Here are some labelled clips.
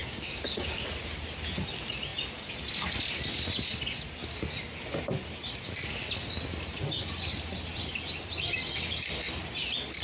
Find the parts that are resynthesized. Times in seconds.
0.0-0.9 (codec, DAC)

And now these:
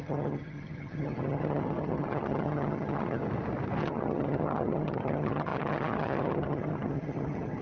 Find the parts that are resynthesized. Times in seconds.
0.0-3.2 (vocoder, HiFi-GAN); 3.8-7.6

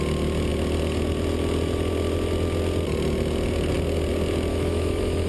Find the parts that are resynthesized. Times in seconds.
4.5-5.3 (autoencoder, DAC-VAE)

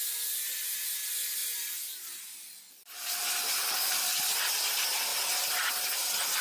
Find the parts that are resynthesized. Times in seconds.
none

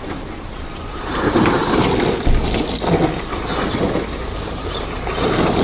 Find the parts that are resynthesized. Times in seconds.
0.0-1.6 (vocoder, BigVGAN v2); 3.3-5.6

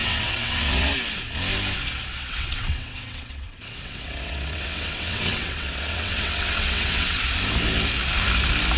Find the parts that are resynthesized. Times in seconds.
0.0-0.9 (vocoder, WaveNeXt); 2.1-7.2

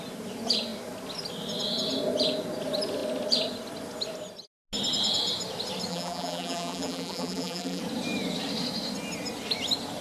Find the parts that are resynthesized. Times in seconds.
5.9-7.8 (vocoder, BigVGAN v2)

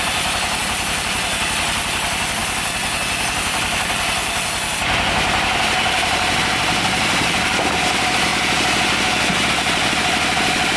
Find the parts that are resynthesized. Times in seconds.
0.0-2.4 (vocoder, BigVGAN v2); 3.3-8.3; 9.5-10.8